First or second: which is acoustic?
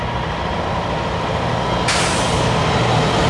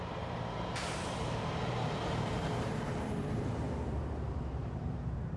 first